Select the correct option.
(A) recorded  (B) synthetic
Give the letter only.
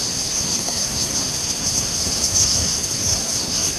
B